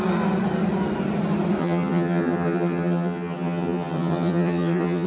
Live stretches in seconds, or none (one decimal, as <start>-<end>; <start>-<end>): 0.0-1.6